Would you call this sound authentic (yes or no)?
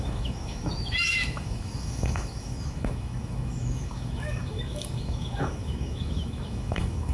no